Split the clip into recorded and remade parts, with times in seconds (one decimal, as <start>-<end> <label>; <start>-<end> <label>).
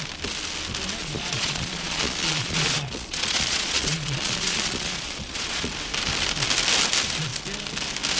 0.0-1.0 recorded; 1.0-5.7 remade; 5.7-8.2 recorded